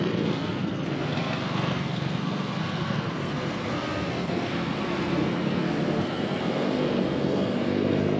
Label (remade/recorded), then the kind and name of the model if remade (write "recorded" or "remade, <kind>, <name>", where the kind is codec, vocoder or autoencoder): remade, codec, SNAC